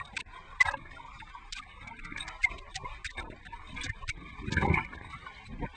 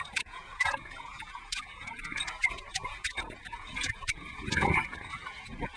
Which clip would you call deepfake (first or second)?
second